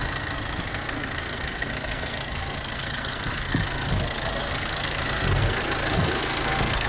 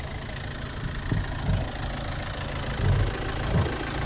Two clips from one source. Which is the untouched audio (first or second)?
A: second